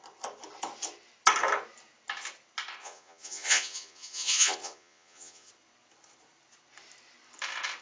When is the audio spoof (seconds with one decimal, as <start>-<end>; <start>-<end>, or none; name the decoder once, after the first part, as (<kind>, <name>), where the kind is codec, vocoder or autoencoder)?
2.8-5.5 (vocoder, Vocos)

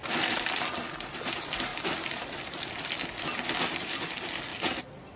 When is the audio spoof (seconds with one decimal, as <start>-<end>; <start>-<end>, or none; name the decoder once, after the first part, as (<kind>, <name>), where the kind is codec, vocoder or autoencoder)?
none

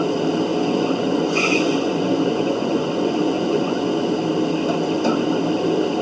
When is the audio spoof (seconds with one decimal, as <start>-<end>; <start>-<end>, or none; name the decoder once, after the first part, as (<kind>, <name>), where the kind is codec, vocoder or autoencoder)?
0.5-4.1 (vocoder, Vocos)

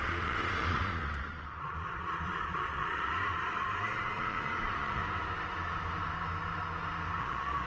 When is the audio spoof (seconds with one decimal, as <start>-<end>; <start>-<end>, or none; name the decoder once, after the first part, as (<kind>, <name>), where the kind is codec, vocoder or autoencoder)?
0.0-5.0 (vocoder, Vocos); 7.2-7.7